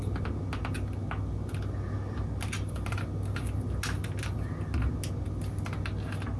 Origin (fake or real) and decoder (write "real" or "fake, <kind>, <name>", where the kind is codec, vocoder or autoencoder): real